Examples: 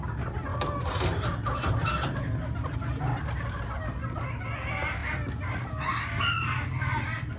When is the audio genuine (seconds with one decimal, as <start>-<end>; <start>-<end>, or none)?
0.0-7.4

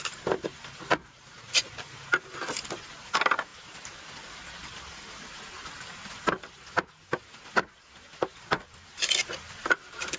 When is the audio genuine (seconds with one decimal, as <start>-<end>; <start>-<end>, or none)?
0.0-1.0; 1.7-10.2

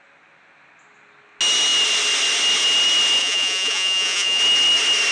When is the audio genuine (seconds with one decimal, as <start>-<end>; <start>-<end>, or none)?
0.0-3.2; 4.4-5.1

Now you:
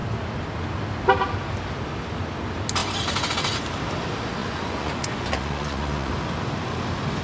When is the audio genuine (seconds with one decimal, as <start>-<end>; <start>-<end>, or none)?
0.0-4.4; 6.1-7.2